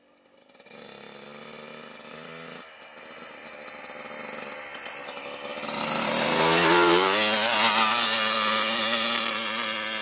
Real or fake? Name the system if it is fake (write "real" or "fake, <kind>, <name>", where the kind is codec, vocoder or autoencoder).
real